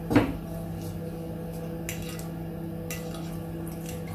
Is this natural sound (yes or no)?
yes